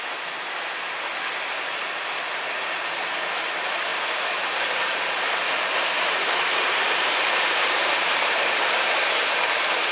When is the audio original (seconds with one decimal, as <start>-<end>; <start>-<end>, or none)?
0.0-2.6; 3.4-3.9; 8.6-9.9